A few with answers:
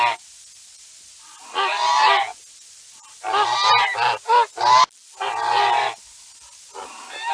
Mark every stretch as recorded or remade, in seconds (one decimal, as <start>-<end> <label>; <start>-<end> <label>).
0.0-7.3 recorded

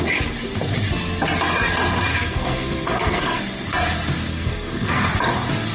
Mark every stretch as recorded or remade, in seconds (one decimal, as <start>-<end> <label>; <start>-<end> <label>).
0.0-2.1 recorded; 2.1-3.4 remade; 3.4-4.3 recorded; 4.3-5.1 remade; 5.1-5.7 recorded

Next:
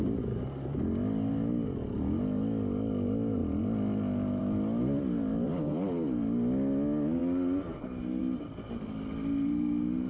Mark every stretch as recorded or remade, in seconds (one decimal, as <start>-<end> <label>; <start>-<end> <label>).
0.0-10.1 recorded

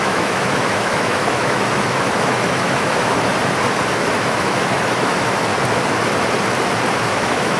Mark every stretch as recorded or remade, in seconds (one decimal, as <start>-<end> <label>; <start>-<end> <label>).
0.0-3.3 remade; 3.3-3.9 recorded; 3.9-5.5 remade; 5.5-6.9 recorded; 6.9-7.6 remade